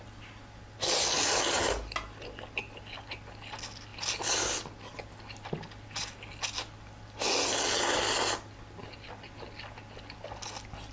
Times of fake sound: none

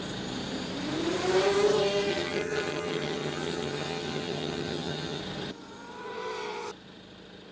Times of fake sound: 2.1-5.2 (vocoder, HiFi-GAN)

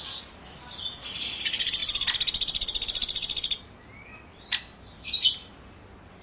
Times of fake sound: none

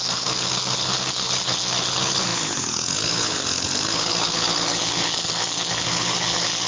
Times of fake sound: 0.0-6.7 (codec, HILCodec)